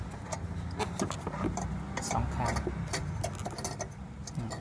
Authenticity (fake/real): real